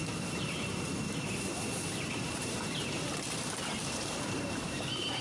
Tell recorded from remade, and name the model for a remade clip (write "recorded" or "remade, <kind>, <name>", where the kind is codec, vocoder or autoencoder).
remade, vocoder, BigVGAN v2